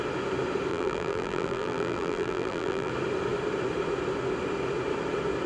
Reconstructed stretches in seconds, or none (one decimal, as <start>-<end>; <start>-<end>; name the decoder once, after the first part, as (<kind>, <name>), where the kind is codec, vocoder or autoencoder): 0.7-2.9 (vocoder, BigVGAN v2)

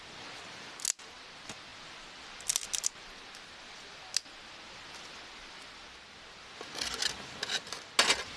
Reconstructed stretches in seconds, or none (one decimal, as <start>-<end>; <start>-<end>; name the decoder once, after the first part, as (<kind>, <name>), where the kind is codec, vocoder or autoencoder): none

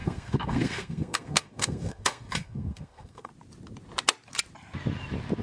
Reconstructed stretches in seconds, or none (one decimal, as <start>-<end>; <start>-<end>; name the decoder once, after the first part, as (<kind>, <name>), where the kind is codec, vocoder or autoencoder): 0.0-3.3 (codec, SNAC)

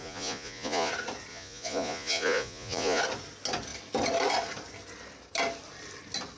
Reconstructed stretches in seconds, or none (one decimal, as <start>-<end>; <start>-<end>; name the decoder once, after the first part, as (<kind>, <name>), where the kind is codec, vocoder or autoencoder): 0.0-0.9 (vocoder, Vocos); 1.3-3.0

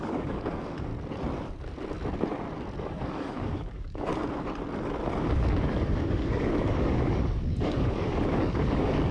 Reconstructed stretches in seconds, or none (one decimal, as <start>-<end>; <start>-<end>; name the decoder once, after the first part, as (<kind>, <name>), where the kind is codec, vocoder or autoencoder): 0.0-0.9 (codec, DAC); 2.8-4.1; 5.2-9.1

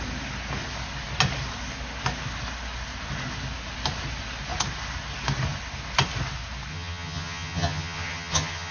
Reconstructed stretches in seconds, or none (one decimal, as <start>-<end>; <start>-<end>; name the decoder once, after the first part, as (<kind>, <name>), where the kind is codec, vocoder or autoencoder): 6.7-8.7 (vocoder, HiFi-GAN)

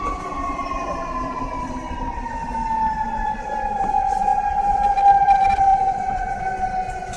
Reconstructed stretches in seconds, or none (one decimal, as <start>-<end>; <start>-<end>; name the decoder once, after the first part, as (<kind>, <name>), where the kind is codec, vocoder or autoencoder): 5.7-6.4 (vocoder, Vocos)

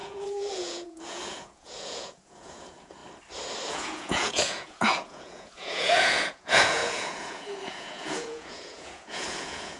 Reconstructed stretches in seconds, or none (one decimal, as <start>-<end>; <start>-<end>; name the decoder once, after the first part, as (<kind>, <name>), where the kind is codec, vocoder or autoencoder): 0.0-3.0 (vocoder, Vocos); 3.7-9.8